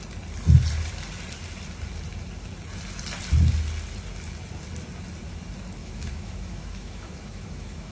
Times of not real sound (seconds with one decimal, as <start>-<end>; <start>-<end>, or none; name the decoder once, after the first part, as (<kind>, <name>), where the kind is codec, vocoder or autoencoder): 5.8-7.9 (autoencoder, DAC-VAE)